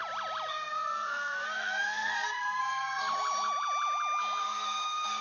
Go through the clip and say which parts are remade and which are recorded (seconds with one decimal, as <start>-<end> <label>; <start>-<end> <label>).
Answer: 0.0-0.5 recorded; 0.5-3.0 remade; 3.0-4.4 recorded; 4.4-5.2 remade

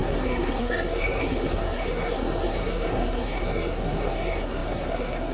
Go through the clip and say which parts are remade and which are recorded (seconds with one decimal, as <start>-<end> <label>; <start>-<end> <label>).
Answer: 0.0-5.3 remade

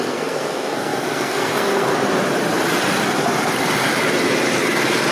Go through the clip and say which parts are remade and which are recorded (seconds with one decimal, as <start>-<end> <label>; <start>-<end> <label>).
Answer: 0.0-1.9 remade; 1.9-5.1 recorded

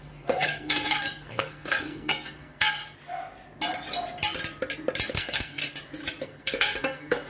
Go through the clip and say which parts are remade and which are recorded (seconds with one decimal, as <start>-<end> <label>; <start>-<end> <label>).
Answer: 0.0-2.8 remade; 2.8-5.1 recorded; 5.1-5.6 remade; 5.6-6.2 recorded; 6.2-7.3 remade

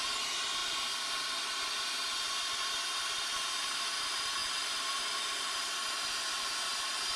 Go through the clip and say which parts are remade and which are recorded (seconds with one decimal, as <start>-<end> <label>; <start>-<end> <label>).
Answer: 0.0-7.2 recorded